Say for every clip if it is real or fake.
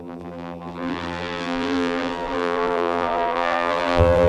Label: fake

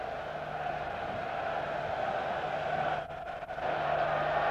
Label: real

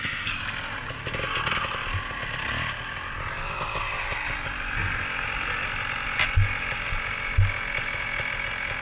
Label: real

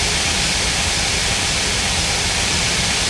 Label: fake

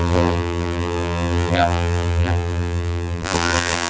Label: fake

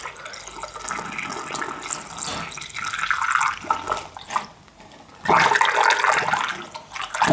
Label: real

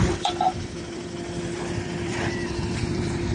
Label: fake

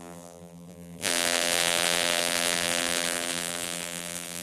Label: fake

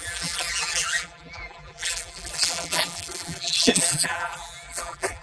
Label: fake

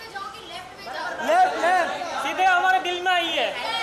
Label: real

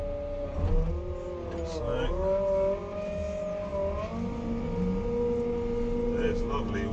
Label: real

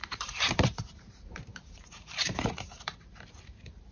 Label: fake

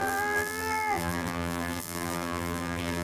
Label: fake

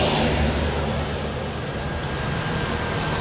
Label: real